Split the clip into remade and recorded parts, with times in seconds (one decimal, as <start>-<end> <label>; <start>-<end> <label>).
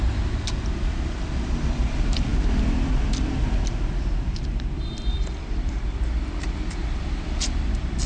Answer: 0.0-8.1 remade